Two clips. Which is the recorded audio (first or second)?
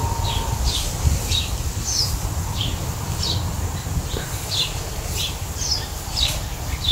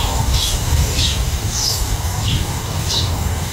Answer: first